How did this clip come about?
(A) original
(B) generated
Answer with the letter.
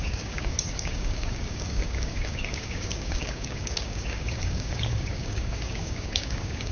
B